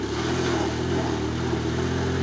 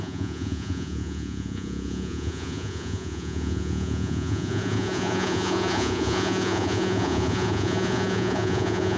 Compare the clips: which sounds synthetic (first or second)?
second